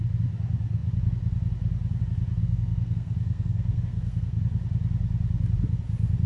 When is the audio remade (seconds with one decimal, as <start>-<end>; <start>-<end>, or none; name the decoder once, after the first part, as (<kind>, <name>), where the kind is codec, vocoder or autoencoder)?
2.4-4.4 (codec, SNAC)